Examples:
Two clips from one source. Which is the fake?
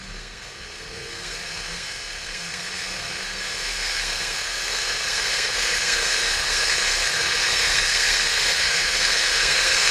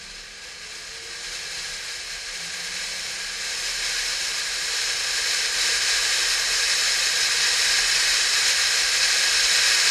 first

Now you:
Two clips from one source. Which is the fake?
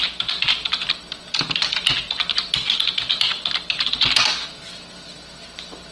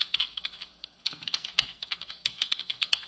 second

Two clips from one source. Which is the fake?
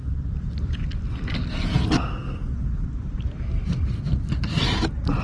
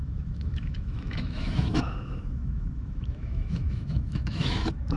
second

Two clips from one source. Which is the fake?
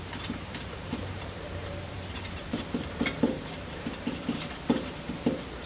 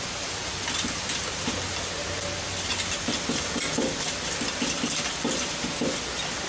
first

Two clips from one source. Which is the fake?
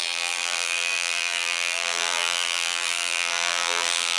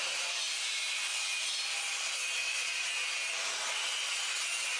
first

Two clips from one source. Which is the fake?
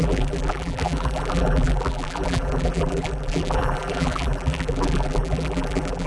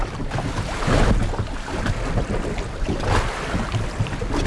first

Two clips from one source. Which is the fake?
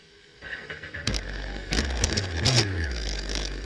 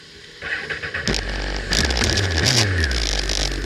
first